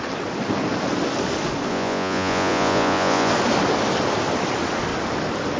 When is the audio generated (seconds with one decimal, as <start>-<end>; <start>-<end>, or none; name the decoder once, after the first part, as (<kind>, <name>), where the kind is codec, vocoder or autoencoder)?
1.7-3.3 (vocoder, Vocos)